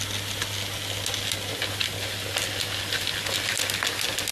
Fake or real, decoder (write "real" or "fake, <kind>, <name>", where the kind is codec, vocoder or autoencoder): real